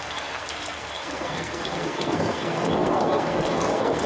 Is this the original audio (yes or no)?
no